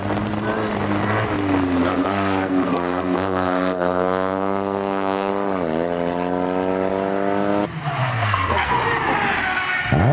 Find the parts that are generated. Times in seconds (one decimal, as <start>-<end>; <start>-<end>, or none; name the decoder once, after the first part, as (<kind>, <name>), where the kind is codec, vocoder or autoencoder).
1.9-5.3 (codec, SNAC); 8.0-8.7